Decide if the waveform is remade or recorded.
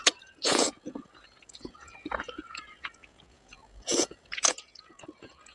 remade